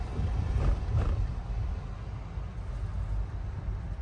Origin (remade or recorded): recorded